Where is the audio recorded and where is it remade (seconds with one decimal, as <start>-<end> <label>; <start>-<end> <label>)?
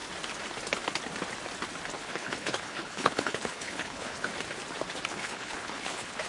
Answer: 0.0-2.0 recorded; 2.0-4.3 remade; 4.3-5.1 recorded; 5.1-6.3 remade